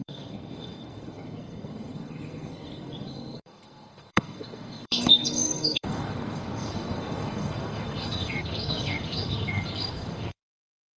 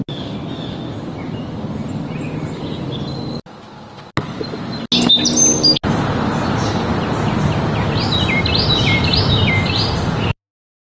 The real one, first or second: second